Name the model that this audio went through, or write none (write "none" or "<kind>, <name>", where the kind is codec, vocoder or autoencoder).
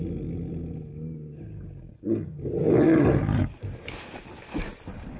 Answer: none